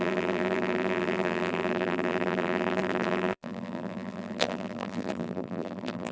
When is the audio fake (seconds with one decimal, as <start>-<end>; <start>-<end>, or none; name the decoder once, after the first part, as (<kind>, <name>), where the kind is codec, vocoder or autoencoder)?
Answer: 0.0-6.1 (vocoder, BigVGAN v2)